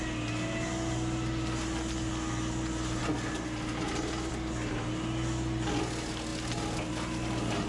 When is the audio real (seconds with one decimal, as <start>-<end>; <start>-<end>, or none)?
0.0-7.7